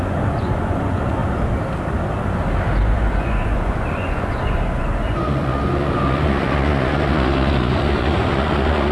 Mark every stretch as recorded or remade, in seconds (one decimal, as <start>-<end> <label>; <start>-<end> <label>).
0.0-1.2 remade; 1.2-2.8 recorded; 2.8-8.9 remade